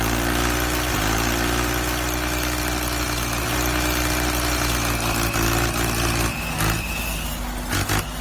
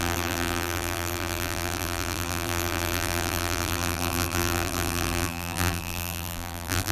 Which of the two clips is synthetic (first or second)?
second